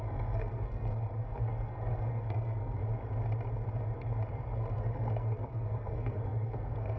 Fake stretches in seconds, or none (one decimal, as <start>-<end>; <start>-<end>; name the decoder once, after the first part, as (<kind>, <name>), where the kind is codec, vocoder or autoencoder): 0.0-2.8 (codec, SNAC); 4.3-7.0